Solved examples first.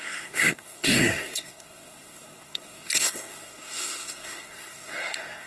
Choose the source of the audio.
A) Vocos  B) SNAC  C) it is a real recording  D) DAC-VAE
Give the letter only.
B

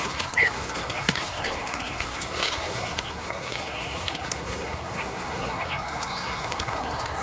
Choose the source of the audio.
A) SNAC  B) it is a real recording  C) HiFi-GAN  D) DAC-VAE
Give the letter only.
A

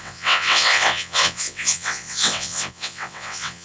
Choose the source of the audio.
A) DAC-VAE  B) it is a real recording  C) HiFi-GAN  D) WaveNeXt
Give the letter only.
D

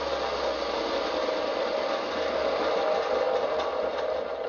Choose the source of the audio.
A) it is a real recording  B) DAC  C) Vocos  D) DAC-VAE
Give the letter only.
A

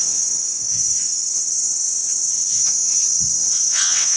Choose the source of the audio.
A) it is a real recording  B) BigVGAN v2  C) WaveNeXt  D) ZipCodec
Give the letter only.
C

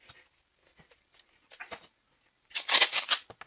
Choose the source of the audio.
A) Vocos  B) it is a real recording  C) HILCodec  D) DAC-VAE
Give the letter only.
B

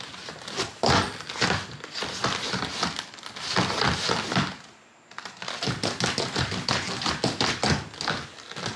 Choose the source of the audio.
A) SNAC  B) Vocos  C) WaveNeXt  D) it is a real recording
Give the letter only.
D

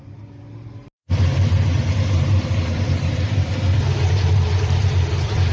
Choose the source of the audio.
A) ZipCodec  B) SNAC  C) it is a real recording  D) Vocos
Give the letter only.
C